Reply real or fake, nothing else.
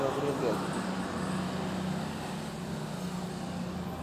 real